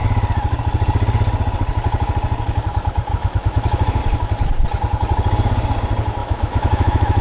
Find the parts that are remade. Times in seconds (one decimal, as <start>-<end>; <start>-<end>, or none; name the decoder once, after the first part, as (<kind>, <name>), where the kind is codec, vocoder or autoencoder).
3.1-4.0 (autoencoder, DAC-VAE); 6.2-7.2